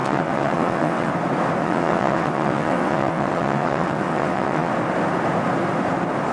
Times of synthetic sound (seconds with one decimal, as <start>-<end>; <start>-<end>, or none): 0.0-1.1; 1.6-4.7